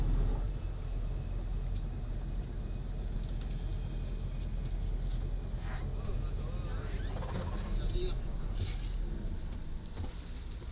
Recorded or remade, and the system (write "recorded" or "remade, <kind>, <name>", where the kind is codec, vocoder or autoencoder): recorded